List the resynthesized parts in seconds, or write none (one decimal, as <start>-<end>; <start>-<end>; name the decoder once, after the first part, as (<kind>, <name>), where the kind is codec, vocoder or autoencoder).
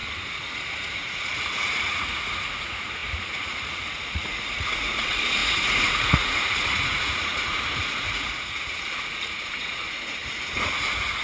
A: 0.0-11.2 (vocoder, Vocos)